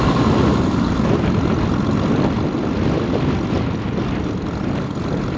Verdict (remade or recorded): recorded